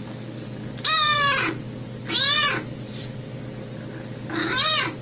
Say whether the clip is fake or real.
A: real